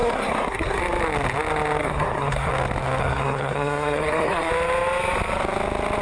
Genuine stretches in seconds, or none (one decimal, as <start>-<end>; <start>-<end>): 0.8-1.8; 2.5-3.0; 4.5-6.0